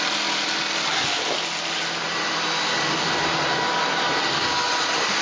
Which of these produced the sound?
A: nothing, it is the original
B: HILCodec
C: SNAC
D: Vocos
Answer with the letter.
A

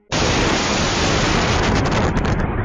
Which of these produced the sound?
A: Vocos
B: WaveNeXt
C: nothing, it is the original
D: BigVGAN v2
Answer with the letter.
C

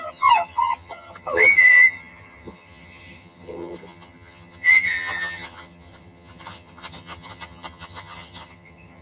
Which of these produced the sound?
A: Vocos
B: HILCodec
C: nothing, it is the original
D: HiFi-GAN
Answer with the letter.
D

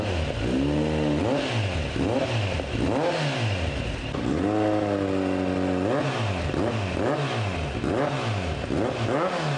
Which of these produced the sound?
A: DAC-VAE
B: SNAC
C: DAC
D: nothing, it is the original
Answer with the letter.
D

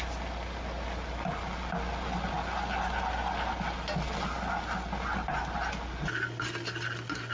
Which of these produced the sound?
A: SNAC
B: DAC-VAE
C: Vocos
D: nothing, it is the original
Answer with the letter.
D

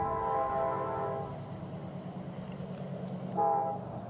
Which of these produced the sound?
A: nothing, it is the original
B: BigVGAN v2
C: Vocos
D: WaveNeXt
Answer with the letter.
A